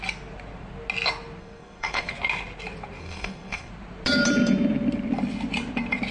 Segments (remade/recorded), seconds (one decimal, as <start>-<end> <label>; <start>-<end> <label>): 0.0-1.4 recorded; 1.4-2.1 remade; 2.1-3.0 recorded; 3.0-3.7 remade; 3.7-6.1 recorded